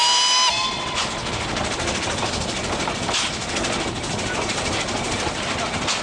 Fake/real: real